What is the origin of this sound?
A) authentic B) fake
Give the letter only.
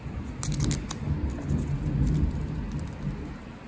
A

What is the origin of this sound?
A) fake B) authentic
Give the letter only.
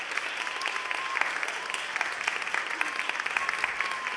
B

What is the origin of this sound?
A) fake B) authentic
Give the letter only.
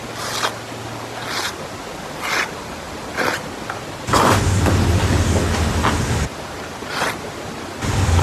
B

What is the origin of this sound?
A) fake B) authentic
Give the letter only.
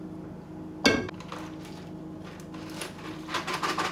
B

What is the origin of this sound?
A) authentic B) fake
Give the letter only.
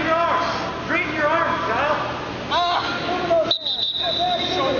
A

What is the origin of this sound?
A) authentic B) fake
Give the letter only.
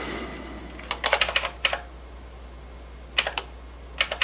A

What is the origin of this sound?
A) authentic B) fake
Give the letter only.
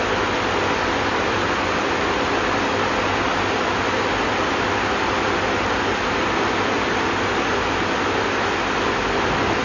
A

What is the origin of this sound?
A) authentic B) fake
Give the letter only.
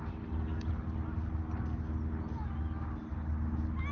A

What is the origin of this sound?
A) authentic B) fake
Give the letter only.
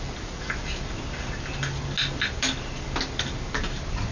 A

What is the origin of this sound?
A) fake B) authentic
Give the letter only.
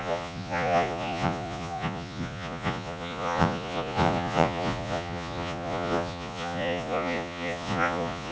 A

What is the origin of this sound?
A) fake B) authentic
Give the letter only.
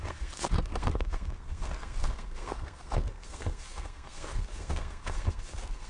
A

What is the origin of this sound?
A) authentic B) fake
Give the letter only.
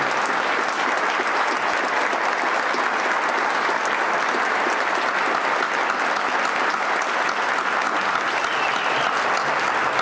A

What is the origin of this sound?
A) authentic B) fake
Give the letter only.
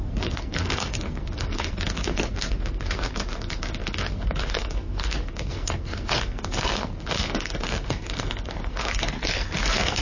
B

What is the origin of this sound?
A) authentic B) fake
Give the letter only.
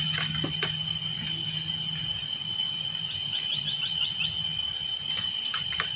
A